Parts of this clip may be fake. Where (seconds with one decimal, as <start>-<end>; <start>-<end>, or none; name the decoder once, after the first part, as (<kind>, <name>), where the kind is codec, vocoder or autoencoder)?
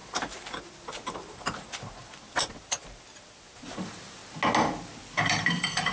0.0-4.2 (vocoder, BigVGAN v2); 5.2-5.9